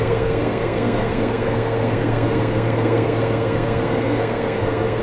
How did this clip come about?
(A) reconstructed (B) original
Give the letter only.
A